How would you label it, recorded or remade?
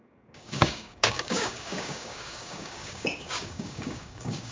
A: remade